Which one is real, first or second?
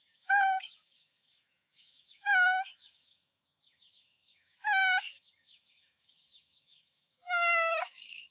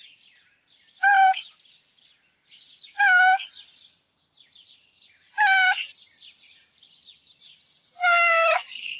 second